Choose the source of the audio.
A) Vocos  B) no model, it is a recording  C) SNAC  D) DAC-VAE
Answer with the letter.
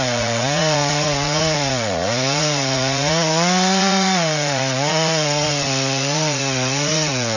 A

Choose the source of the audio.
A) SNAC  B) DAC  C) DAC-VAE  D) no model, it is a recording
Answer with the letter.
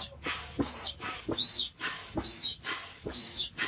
B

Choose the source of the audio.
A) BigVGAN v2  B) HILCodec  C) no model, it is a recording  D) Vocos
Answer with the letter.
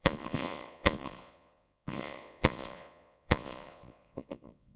D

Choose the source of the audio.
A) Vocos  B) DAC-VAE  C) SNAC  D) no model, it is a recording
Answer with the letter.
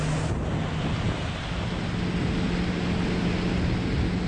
D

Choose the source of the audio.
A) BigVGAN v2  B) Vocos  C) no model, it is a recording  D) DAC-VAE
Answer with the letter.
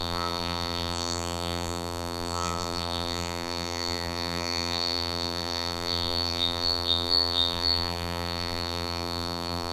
A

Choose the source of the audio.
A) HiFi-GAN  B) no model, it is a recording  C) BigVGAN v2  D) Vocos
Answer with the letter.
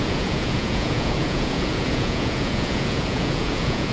D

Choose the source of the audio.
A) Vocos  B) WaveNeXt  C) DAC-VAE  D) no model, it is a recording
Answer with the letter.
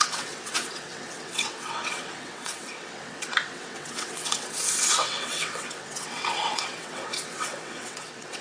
B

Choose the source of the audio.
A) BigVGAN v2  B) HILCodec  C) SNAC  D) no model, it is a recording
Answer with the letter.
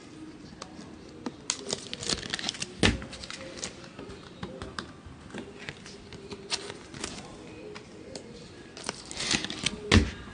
D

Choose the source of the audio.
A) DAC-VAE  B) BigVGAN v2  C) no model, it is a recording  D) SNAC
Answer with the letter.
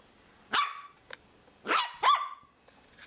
C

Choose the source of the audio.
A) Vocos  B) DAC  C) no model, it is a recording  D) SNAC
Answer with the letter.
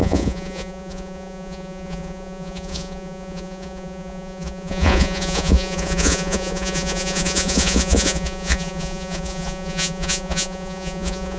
A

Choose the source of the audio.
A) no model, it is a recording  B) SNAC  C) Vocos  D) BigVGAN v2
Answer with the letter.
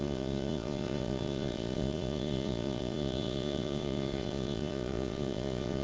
C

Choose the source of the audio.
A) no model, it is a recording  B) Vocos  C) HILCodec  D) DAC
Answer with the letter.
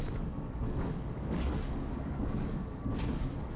D